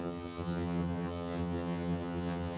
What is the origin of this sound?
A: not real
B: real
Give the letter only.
A